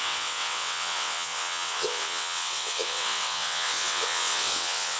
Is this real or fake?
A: fake